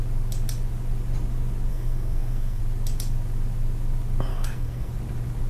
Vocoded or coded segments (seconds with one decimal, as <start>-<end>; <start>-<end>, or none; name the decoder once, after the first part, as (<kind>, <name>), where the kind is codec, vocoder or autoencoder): 1.7-2.6 (codec, SNAC); 4.3-4.9